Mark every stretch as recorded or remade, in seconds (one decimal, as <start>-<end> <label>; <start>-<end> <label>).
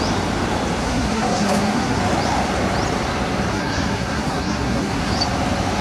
0.0-0.8 recorded; 0.8-2.0 remade; 2.0-3.5 recorded; 3.5-5.1 remade; 5.1-5.8 recorded